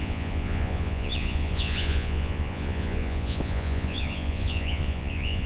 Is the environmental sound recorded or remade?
remade